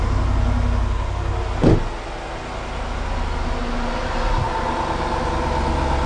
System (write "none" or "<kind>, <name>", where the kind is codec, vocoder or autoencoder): none